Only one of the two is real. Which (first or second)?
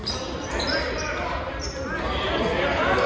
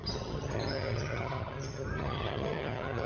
first